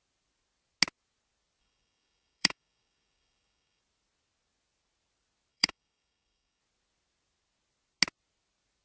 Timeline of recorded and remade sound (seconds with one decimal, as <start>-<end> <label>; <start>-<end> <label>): 0.0-1.6 recorded; 1.6-3.8 remade; 3.8-5.5 recorded; 5.5-6.6 remade; 6.6-8.8 recorded